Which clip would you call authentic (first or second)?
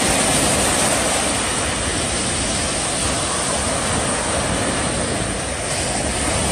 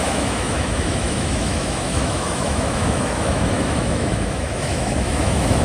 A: first